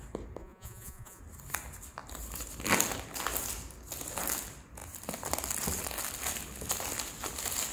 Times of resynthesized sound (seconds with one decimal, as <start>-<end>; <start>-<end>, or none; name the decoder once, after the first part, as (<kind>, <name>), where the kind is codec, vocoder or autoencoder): 0.4-1.2 (vocoder, Vocos)